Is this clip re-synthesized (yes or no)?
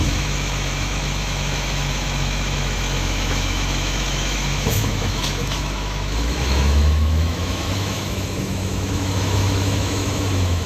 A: yes